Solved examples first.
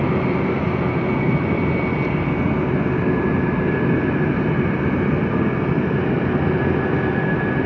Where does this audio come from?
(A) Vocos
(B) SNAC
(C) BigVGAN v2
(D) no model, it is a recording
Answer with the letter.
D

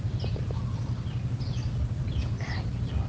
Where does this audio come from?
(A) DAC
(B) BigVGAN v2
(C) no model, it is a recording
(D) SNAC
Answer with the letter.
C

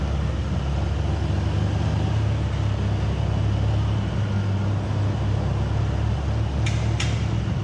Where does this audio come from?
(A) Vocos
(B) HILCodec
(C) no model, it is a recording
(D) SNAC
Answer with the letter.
C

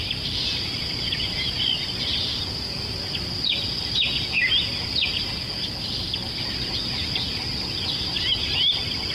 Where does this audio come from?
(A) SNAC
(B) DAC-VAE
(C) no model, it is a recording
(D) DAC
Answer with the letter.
C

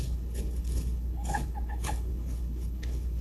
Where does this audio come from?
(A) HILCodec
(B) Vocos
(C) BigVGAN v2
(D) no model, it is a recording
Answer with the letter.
A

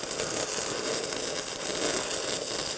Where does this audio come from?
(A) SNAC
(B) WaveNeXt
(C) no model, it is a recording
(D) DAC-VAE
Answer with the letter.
C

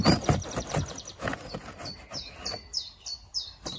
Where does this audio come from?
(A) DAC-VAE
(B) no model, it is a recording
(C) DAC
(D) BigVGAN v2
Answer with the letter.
B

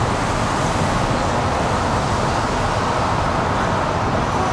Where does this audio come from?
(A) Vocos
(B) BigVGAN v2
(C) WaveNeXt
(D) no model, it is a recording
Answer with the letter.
D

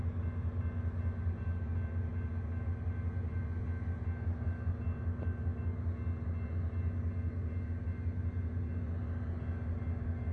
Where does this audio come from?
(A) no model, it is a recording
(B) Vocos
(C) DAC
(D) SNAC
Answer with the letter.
A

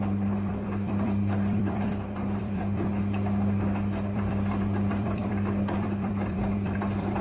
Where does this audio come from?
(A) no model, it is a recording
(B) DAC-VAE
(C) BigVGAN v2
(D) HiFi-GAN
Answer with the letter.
C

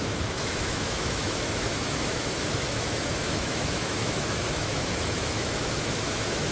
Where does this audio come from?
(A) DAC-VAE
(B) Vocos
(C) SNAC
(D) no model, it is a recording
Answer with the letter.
A